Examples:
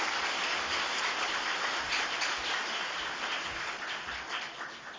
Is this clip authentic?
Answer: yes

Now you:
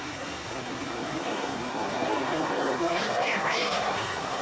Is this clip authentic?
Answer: no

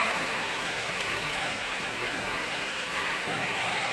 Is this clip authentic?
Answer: no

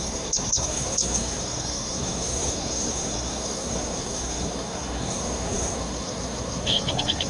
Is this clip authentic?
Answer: no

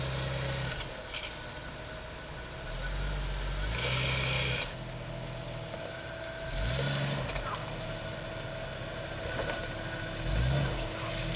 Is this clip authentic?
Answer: yes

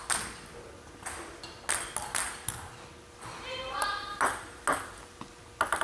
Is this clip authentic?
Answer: yes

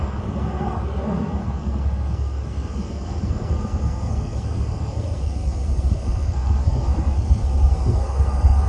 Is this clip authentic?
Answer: no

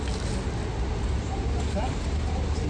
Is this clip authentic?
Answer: yes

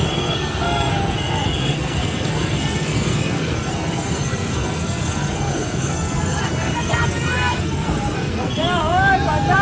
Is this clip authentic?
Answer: no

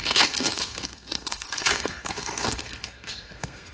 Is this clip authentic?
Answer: no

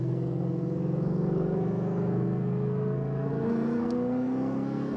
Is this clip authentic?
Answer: no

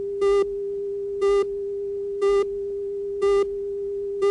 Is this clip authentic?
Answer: yes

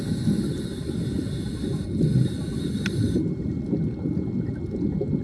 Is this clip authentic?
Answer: yes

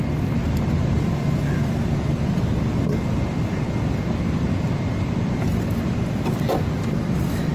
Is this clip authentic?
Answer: yes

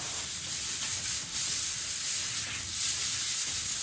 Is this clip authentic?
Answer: yes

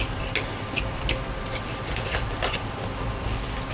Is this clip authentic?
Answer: yes